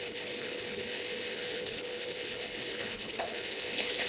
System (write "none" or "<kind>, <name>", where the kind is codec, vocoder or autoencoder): codec, HILCodec